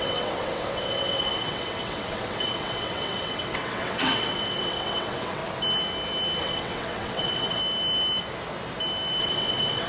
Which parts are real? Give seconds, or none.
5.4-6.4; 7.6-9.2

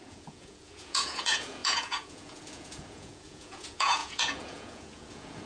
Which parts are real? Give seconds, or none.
none

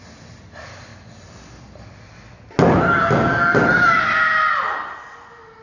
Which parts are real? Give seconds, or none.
0.0-5.6

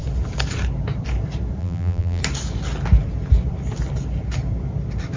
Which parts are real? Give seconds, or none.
0.0-1.6; 2.2-5.2

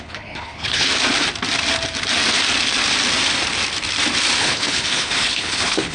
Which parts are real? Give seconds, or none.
0.9-4.4

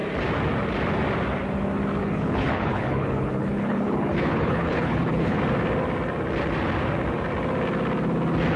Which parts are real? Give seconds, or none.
0.0-2.0; 5.4-8.6

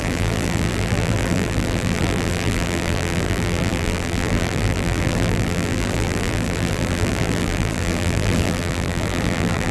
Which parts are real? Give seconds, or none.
none